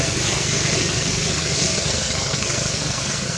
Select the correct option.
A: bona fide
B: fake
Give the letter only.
B